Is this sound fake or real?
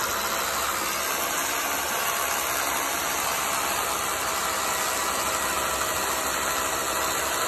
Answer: real